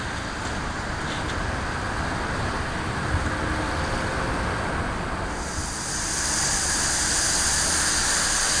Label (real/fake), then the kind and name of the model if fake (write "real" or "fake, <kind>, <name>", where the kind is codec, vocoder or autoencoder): real